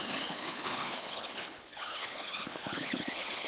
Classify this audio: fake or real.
fake